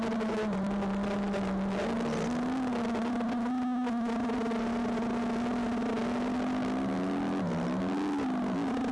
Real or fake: real